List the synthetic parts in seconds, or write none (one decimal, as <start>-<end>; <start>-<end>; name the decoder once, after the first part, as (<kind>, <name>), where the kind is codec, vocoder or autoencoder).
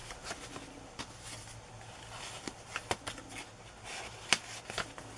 none